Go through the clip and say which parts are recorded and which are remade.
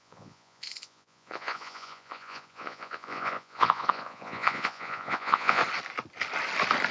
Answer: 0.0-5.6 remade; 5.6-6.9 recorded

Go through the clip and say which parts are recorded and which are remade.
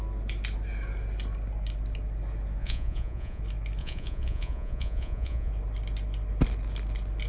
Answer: 0.0-2.6 recorded; 2.6-3.4 remade; 3.4-3.8 recorded; 3.8-5.5 remade; 5.5-7.3 recorded